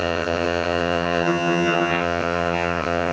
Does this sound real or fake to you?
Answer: fake